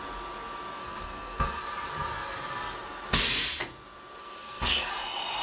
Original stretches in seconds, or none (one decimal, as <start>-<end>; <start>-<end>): 0.0-0.8; 1.6-4.2; 4.9-5.4